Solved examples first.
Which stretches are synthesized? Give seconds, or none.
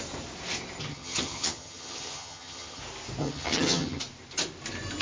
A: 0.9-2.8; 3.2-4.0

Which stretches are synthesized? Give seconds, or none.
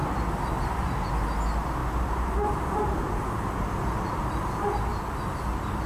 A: 1.8-4.5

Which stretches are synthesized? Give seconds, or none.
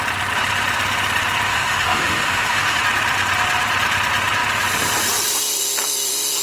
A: 1.5-2.8